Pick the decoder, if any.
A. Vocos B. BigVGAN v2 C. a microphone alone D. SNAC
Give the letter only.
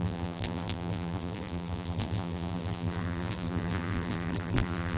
B